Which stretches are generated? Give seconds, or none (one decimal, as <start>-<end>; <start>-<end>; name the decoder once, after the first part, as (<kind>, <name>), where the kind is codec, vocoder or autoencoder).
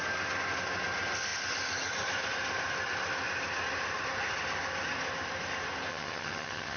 5.9-6.8 (vocoder, HiFi-GAN)